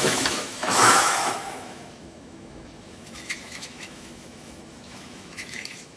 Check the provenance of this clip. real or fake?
fake